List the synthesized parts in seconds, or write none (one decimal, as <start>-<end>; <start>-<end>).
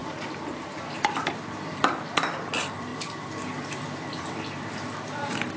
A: 1.8-5.6